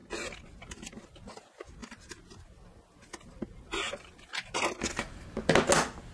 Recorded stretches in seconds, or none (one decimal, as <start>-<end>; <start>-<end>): 0.0-6.1